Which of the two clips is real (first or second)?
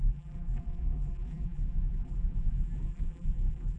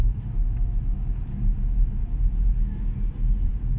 second